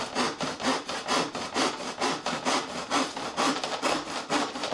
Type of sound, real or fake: real